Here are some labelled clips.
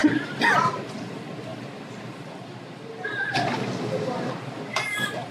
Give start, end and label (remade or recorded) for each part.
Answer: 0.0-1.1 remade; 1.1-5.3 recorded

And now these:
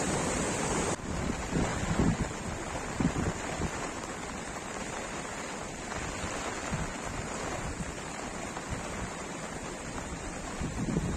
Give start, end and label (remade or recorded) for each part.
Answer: 0.0-11.2 remade

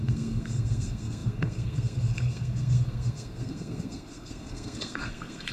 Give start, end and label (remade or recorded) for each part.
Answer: 0.0-5.5 remade